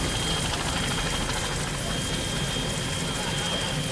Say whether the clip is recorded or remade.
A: recorded